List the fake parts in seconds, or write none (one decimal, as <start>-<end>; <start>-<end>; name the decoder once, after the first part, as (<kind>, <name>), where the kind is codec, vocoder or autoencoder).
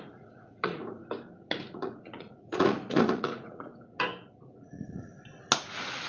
0.0-1.0 (vocoder, Vocos); 1.7-3.7; 4.3-5.1